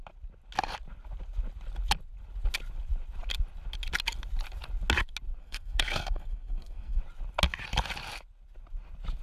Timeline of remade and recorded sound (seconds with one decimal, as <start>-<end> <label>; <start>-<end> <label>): 0.0-5.4 recorded; 5.4-7.0 remade; 7.0-9.2 recorded